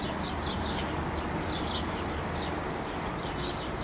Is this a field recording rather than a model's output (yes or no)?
yes